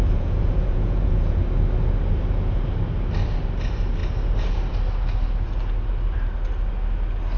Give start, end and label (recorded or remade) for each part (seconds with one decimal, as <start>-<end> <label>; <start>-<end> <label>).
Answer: 0.0-1.4 remade; 1.4-7.4 recorded